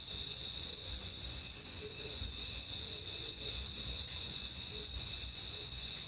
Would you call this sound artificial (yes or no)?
yes